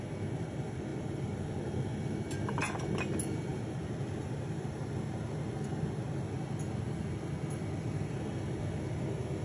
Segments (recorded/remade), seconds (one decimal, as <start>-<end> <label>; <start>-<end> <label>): 0.0-0.9 recorded; 0.9-1.4 remade; 1.4-9.4 recorded